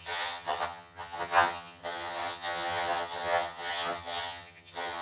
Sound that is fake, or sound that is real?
fake